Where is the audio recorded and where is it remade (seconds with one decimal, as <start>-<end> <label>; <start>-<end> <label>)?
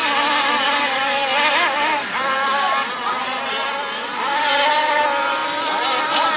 0.0-5.4 remade; 5.4-6.0 recorded; 6.0-6.4 remade